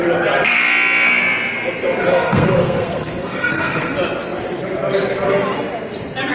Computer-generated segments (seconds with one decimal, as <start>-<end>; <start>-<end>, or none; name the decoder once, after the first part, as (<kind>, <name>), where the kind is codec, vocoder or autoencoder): 2.1-3.9 (codec, SNAC)